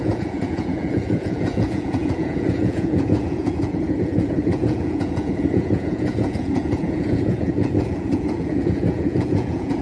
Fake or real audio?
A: fake